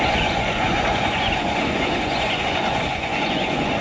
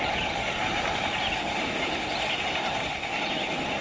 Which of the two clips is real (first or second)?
second